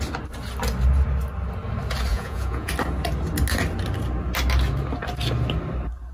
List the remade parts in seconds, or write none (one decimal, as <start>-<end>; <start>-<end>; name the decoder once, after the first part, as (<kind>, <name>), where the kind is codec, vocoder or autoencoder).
2.1-2.7 (vocoder, Vocos)